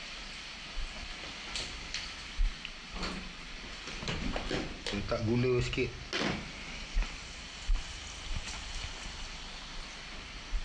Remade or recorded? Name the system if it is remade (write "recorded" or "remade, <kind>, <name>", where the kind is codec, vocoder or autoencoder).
recorded